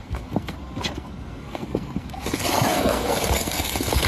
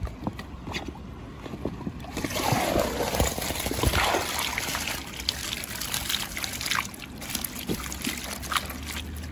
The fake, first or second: first